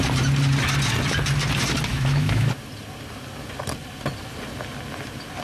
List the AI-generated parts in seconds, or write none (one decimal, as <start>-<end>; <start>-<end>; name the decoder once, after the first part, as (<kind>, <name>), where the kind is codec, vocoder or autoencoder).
1.9-2.5 (autoencoder, DAC-VAE)